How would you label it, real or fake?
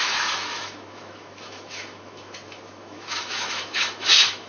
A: fake